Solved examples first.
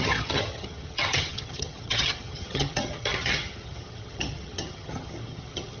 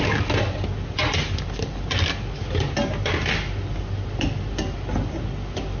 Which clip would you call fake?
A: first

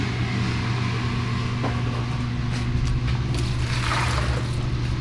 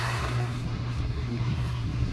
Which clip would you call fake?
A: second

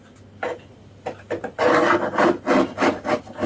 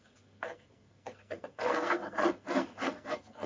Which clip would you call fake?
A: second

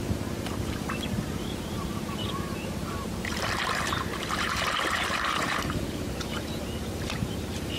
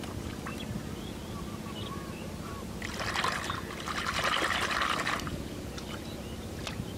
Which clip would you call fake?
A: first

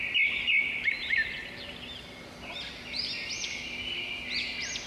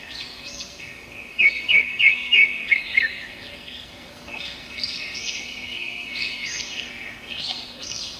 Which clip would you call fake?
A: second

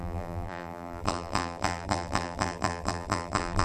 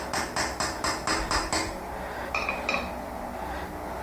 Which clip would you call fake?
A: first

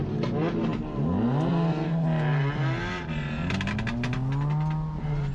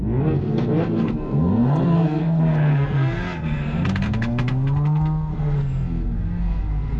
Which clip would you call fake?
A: second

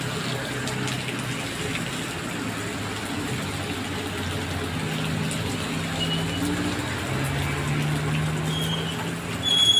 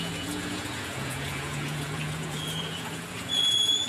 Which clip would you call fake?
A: second